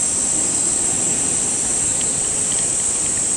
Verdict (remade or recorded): recorded